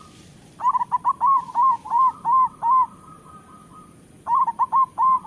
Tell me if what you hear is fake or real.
fake